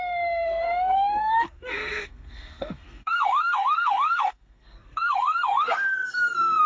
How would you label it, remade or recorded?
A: remade